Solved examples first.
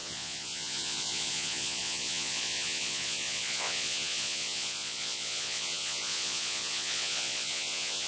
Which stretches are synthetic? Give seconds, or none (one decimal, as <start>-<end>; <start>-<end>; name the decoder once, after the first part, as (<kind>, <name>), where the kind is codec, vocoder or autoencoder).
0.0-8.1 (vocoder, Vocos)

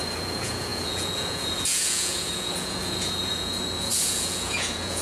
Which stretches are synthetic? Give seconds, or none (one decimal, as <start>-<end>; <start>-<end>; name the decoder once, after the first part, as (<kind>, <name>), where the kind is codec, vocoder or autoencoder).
0.0-5.0 (vocoder, Vocos)

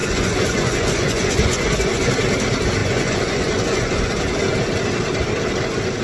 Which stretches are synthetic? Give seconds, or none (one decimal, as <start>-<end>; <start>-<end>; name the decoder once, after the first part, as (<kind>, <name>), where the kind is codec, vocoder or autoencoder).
0.0-2.1 (vocoder, Vocos); 2.8-4.2

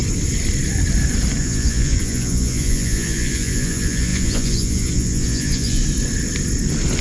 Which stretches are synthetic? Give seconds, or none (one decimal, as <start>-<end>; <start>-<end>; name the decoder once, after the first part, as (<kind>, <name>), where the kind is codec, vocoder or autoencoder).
1.4-5.8 (vocoder, Vocos)

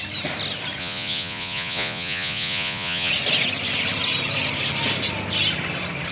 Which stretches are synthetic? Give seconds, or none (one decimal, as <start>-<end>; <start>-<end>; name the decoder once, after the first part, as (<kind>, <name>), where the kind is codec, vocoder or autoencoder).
0.8-3.1 (vocoder, Vocos)

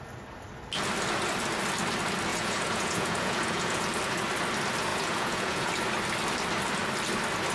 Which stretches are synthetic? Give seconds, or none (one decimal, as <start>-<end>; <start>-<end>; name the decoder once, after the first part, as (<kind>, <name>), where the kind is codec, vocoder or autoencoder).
2.3-3.9 (vocoder, Vocos); 4.9-5.7